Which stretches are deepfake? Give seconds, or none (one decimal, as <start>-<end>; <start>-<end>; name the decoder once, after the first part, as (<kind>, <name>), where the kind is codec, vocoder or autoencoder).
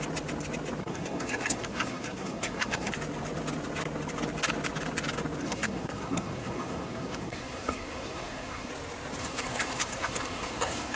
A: 0.8-2.9 (codec, SNAC); 5.4-8.7; 9.2-11.0